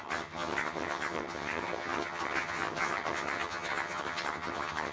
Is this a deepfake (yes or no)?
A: yes